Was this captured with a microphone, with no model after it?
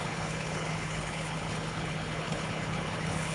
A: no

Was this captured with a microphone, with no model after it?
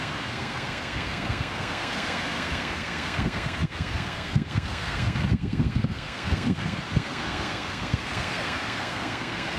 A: no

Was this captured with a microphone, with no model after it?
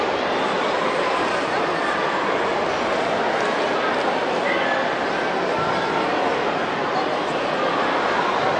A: yes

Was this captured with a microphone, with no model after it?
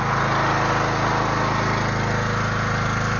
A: yes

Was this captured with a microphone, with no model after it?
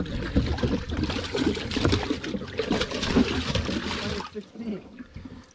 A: yes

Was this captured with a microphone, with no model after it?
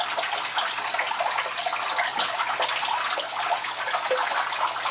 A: yes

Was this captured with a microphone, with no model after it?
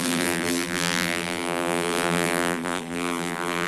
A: no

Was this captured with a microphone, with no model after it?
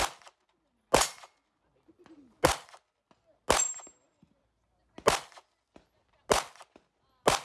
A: yes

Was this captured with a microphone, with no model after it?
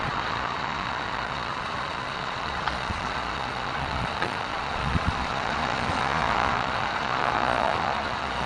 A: no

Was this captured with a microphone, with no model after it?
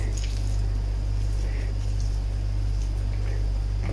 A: yes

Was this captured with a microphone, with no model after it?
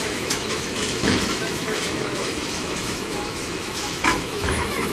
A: no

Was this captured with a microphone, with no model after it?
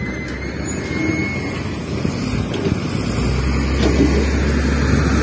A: yes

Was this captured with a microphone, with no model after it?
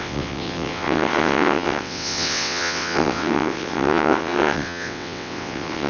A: no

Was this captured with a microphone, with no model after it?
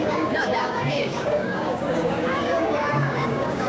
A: no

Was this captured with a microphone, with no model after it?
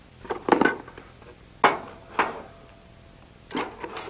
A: yes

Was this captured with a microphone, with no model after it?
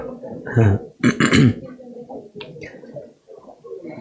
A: yes